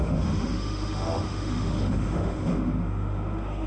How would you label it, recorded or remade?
remade